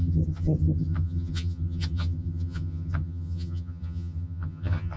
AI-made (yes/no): yes